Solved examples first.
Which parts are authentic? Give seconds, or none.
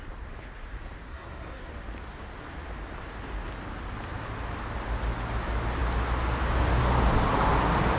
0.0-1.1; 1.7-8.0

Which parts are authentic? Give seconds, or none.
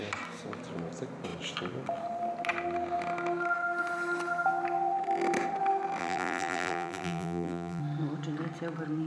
0.0-6.0; 7.8-9.1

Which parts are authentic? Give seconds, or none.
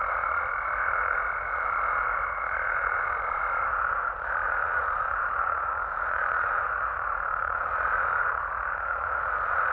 none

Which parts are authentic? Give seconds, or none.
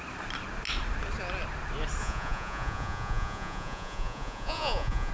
0.0-2.0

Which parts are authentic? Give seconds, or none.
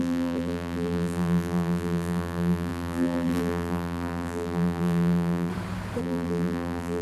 5.5-6.0